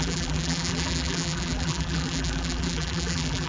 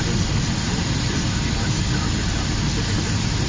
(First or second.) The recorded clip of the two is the second